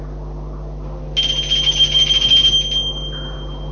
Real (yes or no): yes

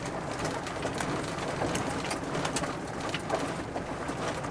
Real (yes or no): yes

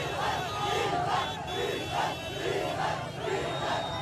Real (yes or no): no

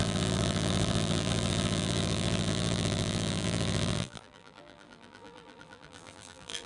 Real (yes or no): no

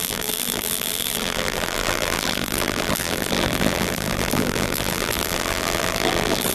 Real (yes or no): no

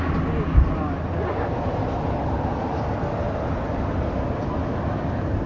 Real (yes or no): yes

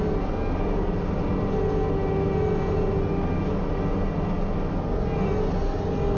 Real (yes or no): yes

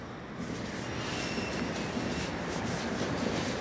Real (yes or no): yes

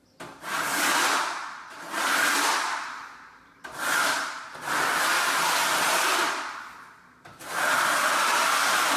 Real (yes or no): yes